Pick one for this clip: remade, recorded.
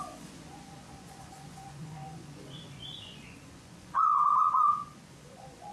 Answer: remade